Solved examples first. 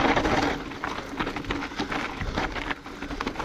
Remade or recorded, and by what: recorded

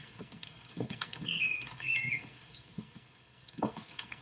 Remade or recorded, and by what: remade, codec, SNAC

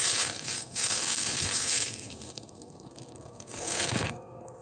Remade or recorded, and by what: remade, codec, SNAC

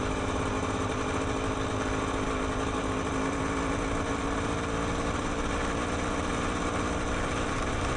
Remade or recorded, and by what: recorded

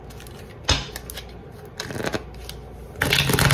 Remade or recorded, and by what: recorded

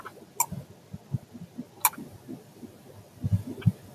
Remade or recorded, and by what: recorded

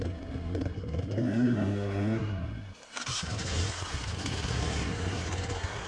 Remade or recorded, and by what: remade, codec, SNAC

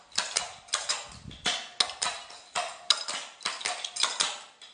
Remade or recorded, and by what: recorded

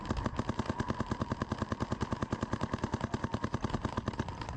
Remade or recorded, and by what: recorded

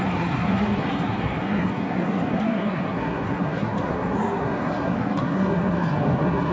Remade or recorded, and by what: remade, codec, SNAC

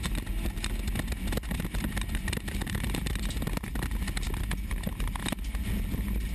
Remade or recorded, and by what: recorded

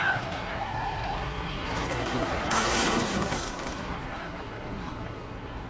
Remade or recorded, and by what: remade, codec, SNAC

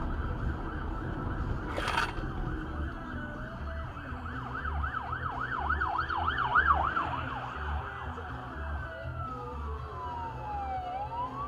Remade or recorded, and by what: recorded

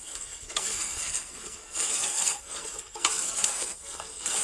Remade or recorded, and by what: remade, codec, SNAC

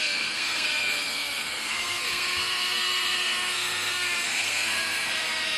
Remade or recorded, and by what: remade, codec, SNAC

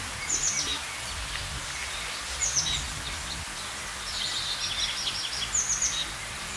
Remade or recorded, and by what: recorded